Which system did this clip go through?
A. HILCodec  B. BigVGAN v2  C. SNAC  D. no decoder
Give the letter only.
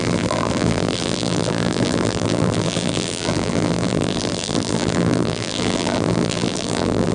B